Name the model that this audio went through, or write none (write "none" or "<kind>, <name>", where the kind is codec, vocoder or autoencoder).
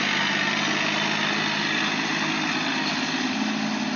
none